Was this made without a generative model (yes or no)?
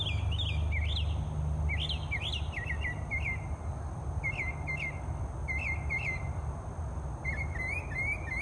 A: yes